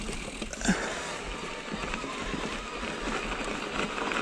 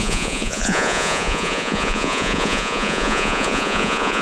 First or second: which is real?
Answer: first